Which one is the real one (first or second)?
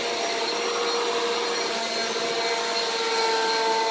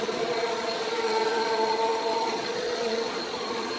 first